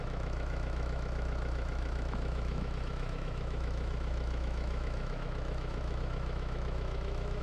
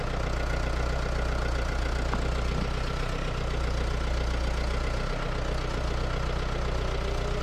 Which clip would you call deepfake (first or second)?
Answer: first